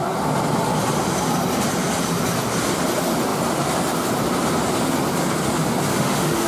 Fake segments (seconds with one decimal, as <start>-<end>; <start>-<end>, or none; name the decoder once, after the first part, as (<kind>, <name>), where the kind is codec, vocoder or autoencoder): 5.9-6.5 (autoencoder, DAC-VAE)